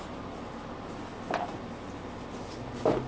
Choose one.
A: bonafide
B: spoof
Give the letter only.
A